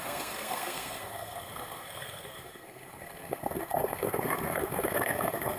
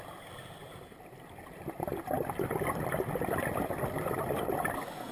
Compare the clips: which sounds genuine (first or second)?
second